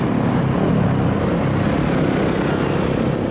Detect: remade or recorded recorded